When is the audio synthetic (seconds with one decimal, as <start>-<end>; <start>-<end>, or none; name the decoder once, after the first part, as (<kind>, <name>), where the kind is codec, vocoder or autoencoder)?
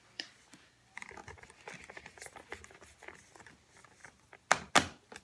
none